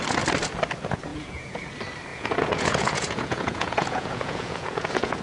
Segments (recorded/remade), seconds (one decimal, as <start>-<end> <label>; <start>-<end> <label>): 0.0-1.1 recorded; 1.1-1.7 remade; 1.7-2.1 recorded; 2.1-5.2 remade